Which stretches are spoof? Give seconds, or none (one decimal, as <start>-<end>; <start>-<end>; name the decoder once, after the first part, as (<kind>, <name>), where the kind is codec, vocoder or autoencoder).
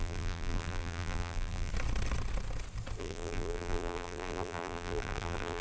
0.0-1.7 (vocoder, BigVGAN v2); 3.0-5.6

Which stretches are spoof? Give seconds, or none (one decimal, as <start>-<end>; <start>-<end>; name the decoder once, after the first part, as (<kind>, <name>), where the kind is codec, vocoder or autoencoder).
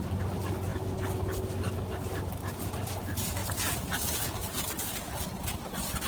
3.4-4.6 (vocoder, BigVGAN v2)